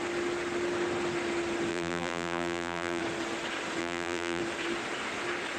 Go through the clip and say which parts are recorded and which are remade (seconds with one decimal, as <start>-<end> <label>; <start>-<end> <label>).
0.0-1.7 recorded; 1.7-3.0 remade; 3.0-3.8 recorded; 3.8-4.4 remade; 4.4-5.6 recorded